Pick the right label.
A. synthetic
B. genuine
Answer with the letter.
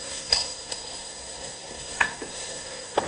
A